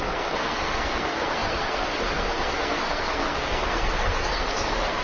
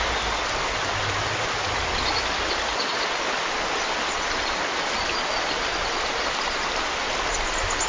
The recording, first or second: second